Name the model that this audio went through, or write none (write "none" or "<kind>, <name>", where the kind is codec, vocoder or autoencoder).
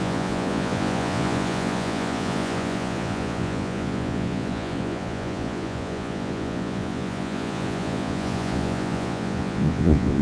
vocoder, Vocos